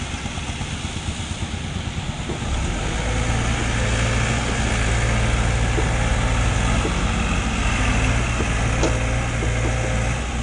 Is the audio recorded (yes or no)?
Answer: yes